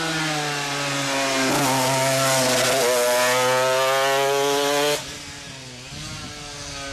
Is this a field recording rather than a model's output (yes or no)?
yes